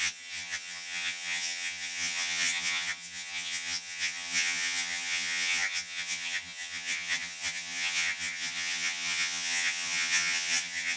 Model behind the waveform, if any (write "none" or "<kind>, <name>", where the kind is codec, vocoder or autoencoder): vocoder, HiFi-GAN